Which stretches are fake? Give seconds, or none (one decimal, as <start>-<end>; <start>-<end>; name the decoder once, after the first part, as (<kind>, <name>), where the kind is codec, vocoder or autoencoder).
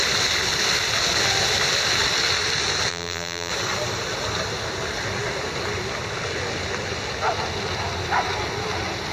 2.9-3.5 (vocoder, BigVGAN v2)